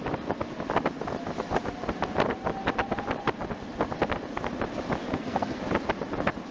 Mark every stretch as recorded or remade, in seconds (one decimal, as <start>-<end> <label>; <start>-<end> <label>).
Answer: 0.0-5.1 recorded; 5.1-5.6 remade; 5.6-6.5 recorded